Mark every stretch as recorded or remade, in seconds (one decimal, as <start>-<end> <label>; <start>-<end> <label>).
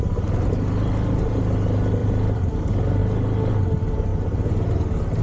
0.0-2.0 recorded; 2.0-2.5 remade; 2.5-5.2 recorded